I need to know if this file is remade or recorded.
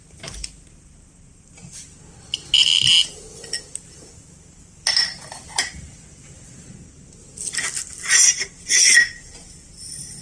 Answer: recorded